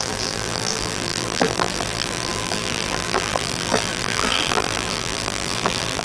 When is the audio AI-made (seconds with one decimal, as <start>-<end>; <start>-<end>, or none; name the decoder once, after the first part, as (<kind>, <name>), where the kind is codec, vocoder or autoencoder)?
0.0-6.0 (vocoder, BigVGAN v2)